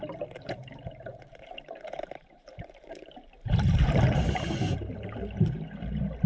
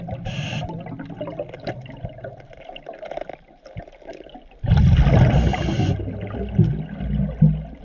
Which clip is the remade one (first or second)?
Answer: first